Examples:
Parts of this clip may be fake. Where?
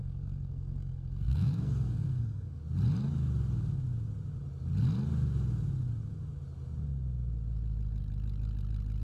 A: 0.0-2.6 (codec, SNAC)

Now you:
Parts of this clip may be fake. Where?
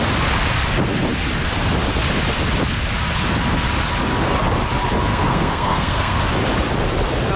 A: 5.1-6.2 (codec, SNAC)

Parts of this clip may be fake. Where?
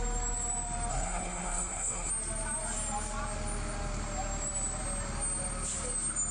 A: 0.9-2.1 (codec, SNAC)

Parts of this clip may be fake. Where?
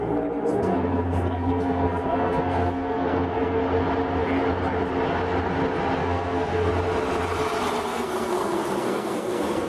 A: 0.5-3.6 (codec, SNAC); 6.0-6.7; 7.9-9.7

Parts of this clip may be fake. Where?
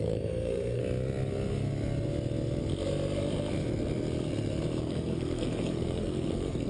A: 0.0-0.8 (codec, SNAC); 4.8-6.7